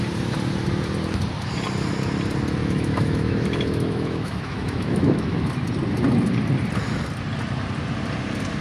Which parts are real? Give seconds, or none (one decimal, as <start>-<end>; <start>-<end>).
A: 0.0-2.6; 5.5-8.6